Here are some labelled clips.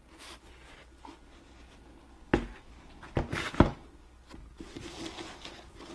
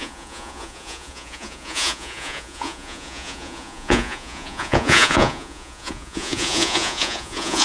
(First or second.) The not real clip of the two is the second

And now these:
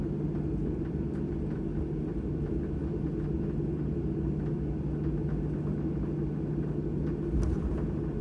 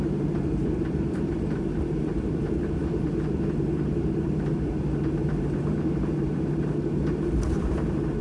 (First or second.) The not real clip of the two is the second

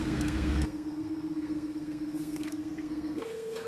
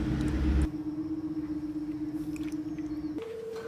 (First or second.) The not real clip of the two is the first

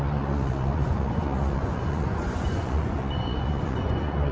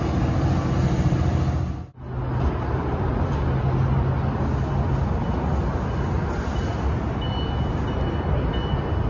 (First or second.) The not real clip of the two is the first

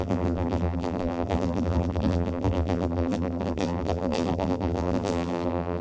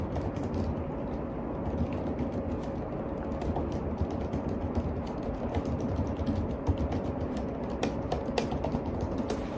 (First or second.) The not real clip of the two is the first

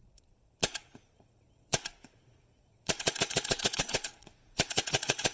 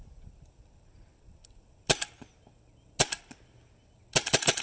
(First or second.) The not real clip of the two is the first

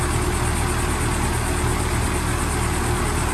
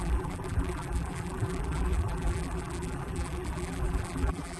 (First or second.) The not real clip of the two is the second